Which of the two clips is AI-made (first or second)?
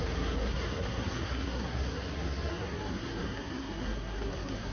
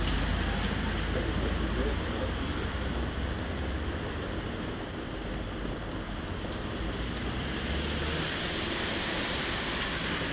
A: first